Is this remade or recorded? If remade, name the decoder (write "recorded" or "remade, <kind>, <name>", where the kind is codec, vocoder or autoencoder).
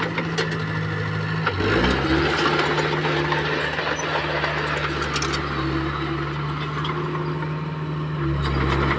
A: recorded